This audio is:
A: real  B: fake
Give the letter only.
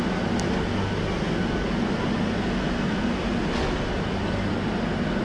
A